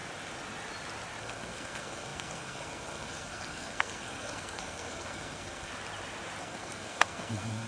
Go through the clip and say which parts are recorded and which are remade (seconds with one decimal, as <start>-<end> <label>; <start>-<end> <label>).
0.0-1.2 recorded; 1.2-5.7 remade; 5.7-6.4 recorded; 6.4-7.7 remade